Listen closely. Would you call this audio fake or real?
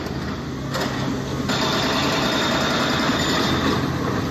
real